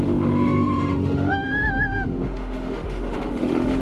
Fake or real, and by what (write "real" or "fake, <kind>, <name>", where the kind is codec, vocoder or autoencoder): fake, autoencoder, DAC-VAE